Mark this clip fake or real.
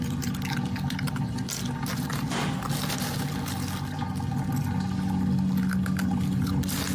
real